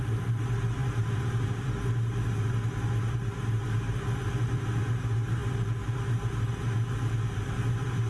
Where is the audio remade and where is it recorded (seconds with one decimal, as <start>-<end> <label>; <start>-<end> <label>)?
0.0-8.1 recorded